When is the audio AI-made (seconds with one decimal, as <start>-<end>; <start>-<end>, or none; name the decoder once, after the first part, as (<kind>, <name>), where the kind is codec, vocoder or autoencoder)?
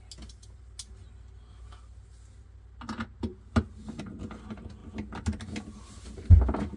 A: none